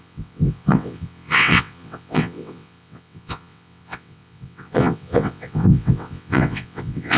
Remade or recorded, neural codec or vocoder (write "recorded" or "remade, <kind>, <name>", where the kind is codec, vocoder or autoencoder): remade, vocoder, WaveNeXt